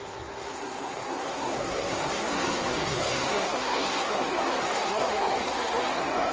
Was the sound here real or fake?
fake